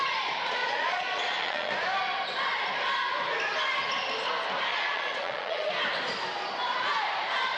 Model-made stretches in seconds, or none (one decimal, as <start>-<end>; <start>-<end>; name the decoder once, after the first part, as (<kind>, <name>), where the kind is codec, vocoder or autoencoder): 0.6-1.7 (vocoder, Vocos); 4.7-5.7